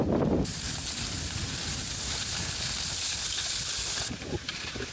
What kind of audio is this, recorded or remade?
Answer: recorded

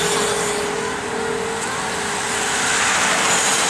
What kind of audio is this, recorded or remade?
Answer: recorded